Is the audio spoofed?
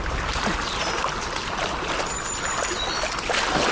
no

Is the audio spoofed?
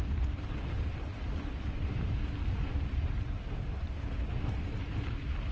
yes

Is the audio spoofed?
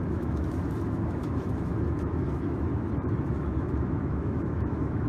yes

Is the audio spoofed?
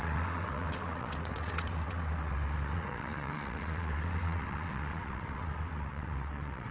yes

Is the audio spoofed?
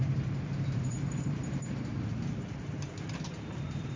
yes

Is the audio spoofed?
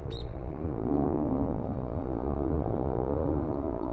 yes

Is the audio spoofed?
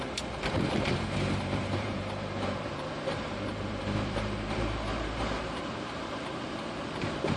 yes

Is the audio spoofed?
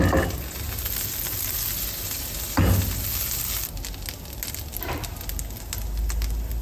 no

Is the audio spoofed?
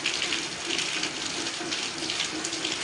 no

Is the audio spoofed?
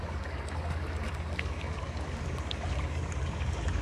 yes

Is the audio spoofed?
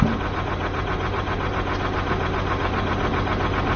no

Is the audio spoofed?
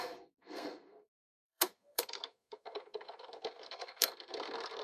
yes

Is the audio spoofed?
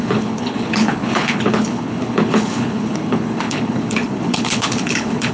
yes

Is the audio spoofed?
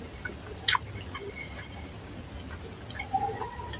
no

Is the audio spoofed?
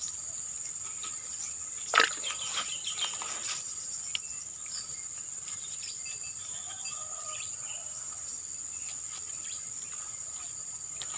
no